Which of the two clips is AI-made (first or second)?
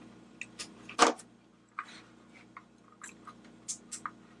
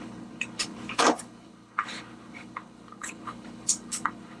second